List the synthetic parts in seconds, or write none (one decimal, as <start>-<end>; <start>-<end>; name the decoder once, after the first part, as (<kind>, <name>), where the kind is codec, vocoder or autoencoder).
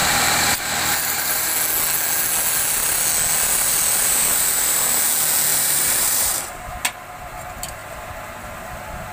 0.0-1.5 (vocoder, BigVGAN v2); 4.1-5.0; 5.5-6.6